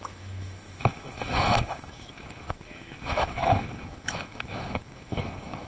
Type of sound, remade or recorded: remade